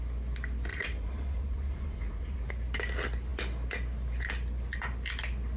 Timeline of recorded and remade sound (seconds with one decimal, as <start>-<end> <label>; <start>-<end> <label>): 0.0-0.7 recorded; 0.7-2.5 remade; 2.5-5.6 recorded